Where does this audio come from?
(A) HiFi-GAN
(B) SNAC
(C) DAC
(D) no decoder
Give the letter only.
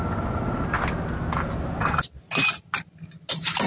D